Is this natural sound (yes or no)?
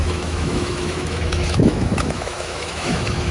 no